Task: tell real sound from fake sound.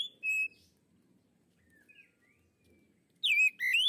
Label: real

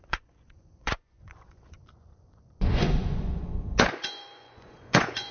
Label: fake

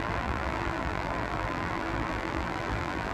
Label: fake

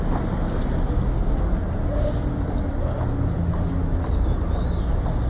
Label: real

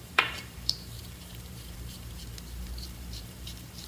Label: fake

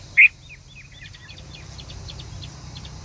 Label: real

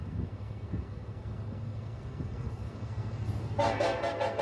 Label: fake